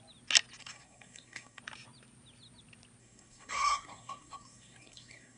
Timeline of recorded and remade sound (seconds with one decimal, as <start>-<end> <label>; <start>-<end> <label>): 0.0-0.6 recorded; 0.6-1.6 remade; 1.6-3.0 recorded; 3.0-5.4 remade